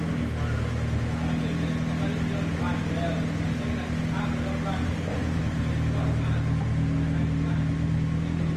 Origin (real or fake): real